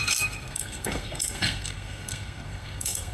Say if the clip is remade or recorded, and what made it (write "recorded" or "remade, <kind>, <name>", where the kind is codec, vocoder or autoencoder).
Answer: remade, codec, SNAC